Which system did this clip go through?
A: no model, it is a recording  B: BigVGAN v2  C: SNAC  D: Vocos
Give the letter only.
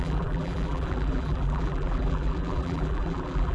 B